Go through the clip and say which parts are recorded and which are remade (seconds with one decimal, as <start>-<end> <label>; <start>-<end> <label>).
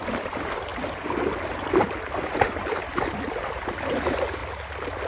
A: 0.0-0.7 remade; 0.7-2.3 recorded; 2.3-2.9 remade; 2.9-3.9 recorded; 3.9-4.4 remade; 4.4-5.1 recorded